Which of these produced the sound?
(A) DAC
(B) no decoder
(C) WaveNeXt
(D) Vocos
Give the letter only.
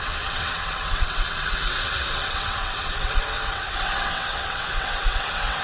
C